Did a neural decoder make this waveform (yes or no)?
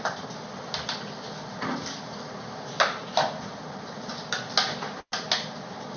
no